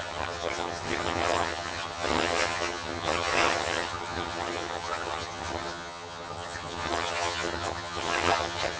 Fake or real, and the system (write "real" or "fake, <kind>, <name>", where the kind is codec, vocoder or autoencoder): fake, vocoder, HiFi-GAN